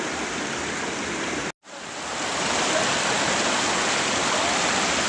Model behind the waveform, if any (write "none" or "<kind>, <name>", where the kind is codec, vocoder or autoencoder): none